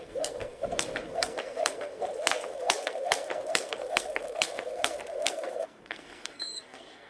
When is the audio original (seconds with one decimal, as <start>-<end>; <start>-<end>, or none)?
none